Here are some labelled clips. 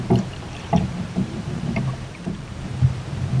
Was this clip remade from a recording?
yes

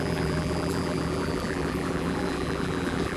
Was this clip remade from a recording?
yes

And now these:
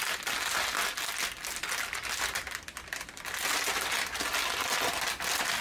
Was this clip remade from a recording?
no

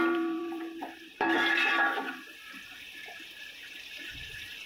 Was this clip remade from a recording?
yes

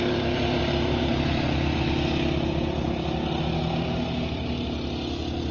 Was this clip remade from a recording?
yes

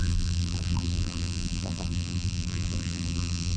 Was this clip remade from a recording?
yes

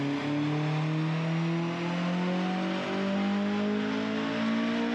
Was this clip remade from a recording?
no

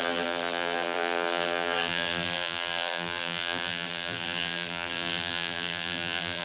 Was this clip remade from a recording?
yes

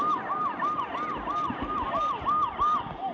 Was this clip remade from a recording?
no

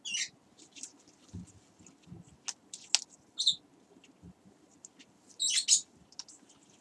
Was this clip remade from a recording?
no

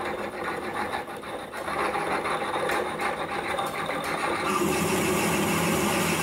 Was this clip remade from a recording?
no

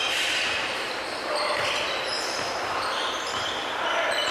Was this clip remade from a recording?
yes